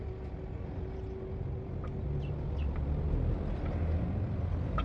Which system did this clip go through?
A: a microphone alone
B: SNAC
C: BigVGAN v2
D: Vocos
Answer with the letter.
A